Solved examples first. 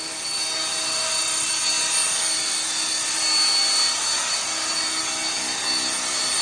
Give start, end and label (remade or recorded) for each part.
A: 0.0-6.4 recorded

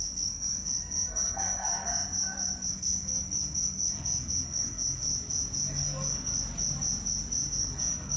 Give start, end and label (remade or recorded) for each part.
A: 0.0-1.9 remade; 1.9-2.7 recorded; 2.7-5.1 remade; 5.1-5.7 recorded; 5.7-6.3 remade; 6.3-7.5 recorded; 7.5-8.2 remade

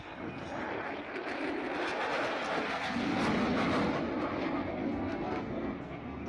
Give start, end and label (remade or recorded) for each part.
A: 0.0-2.7 recorded; 2.7-3.2 remade; 3.2-4.4 recorded; 4.4-6.3 remade

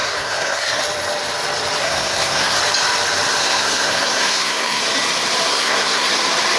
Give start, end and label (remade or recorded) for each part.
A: 0.0-0.8 remade; 0.8-1.8 recorded; 1.8-2.6 remade; 2.6-3.4 recorded; 3.4-4.8 remade; 4.8-5.5 recorded; 5.5-6.1 remade; 6.1-6.6 recorded

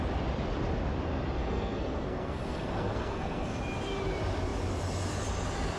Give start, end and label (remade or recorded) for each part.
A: 0.0-1.4 recorded; 1.4-3.6 remade; 3.6-5.8 recorded